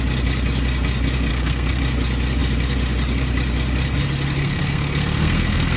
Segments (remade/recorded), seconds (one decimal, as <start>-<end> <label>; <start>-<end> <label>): 0.0-1.3 recorded; 1.3-1.8 remade; 1.8-4.4 recorded; 4.4-5.8 remade